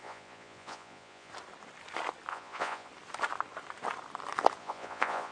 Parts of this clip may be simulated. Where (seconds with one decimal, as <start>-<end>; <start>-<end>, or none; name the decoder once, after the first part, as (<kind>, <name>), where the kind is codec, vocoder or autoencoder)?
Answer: 0.0-1.3 (vocoder, Vocos); 2.3-2.9; 4.6-5.3